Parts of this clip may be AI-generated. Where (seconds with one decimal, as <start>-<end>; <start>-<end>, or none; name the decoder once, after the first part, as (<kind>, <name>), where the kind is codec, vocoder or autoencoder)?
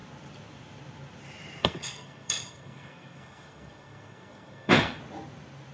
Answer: 1.6-5.0 (codec, SNAC)